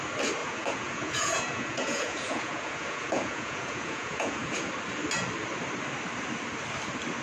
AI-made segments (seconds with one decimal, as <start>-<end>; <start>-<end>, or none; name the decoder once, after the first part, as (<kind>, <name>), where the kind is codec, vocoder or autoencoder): 0.4-4.7 (vocoder, Vocos)